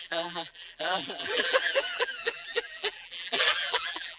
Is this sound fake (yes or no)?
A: yes